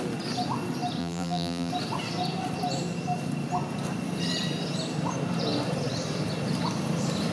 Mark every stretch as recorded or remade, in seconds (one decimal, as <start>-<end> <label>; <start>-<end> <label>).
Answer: 0.0-1.0 recorded; 1.0-1.7 remade; 1.7-7.3 recorded

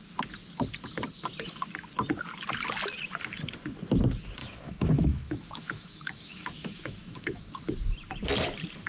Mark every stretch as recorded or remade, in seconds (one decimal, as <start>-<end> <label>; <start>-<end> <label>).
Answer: 0.0-4.4 recorded; 4.4-7.4 remade; 7.4-8.9 recorded

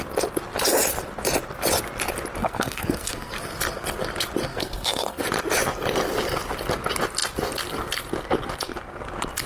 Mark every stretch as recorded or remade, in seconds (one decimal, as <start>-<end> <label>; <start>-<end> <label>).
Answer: 0.0-2.4 recorded; 2.4-3.3 remade; 3.3-4.5 recorded; 4.5-5.2 remade; 5.2-9.5 recorded

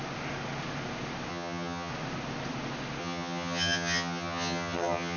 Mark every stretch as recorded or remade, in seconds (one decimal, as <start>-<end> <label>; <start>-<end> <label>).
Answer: 0.0-1.3 recorded; 1.3-1.9 remade; 1.9-3.0 recorded; 3.0-5.2 remade